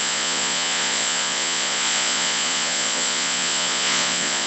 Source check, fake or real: fake